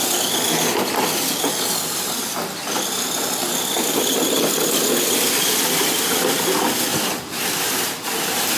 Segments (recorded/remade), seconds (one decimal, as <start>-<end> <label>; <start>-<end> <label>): 0.0-8.6 recorded